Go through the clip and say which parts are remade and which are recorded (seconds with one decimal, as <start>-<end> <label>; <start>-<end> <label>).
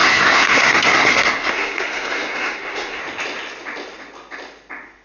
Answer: 0.0-3.0 remade; 3.0-5.0 recorded